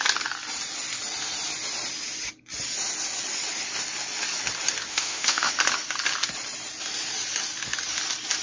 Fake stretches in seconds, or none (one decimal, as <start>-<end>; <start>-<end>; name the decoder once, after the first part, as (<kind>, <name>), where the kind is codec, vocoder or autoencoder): 4.9-5.5 (autoencoder, DAC-VAE)